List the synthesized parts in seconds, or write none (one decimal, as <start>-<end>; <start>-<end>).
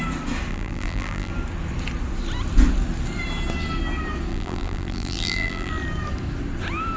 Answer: 0.5-1.3; 4.3-5.7